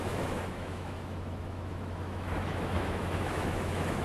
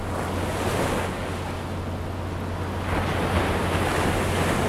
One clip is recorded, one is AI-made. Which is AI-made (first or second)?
first